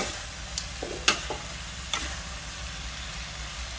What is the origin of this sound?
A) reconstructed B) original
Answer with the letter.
B